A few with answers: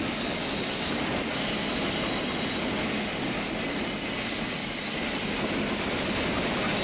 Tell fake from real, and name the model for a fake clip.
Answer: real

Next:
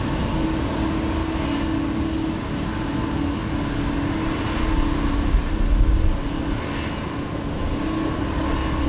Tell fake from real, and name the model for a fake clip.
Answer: real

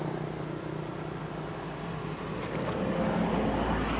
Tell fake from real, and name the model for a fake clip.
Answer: real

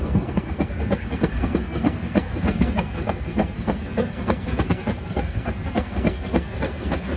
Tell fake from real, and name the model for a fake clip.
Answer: fake, codec, SNAC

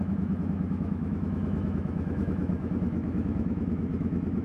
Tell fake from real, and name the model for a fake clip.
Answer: fake, autoencoder, DAC-VAE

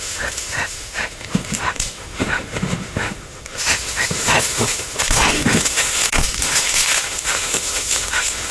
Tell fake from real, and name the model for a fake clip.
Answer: fake, autoencoder, DAC-VAE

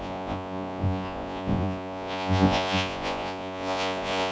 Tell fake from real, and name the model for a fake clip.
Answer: fake, vocoder, Vocos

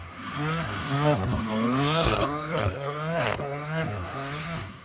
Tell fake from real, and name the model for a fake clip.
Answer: fake, codec, SNAC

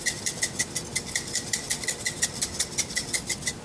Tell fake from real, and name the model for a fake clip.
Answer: real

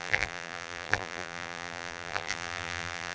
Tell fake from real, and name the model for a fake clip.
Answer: fake, vocoder, BigVGAN v2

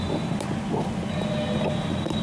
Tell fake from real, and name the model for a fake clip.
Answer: real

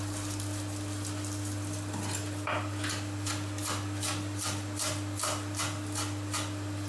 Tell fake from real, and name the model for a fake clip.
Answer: real